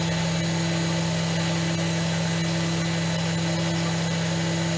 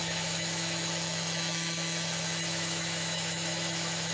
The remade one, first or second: second